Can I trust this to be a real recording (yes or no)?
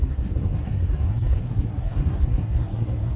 no